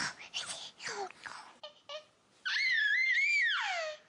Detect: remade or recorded recorded